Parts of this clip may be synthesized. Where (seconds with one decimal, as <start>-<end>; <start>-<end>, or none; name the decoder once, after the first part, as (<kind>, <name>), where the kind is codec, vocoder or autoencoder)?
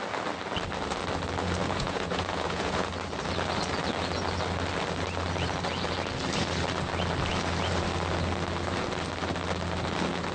1.6-2.9 (vocoder, Vocos)